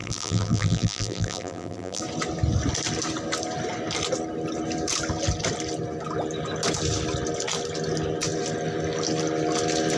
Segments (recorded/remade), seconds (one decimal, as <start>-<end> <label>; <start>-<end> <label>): 0.0-2.0 remade; 2.0-10.0 recorded